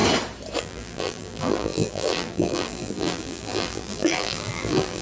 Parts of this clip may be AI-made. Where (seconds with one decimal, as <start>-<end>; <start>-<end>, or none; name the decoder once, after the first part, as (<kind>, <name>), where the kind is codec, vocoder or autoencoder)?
0.6-5.0 (vocoder, BigVGAN v2)